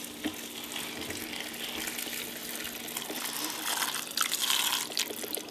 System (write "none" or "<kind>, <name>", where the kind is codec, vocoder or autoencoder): none